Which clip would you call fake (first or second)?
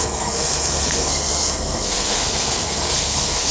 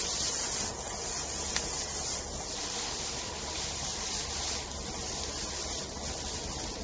first